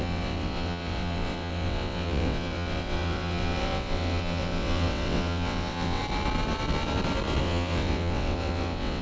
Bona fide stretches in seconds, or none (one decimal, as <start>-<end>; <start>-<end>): 6.0-7.4